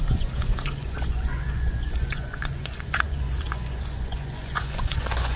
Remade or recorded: remade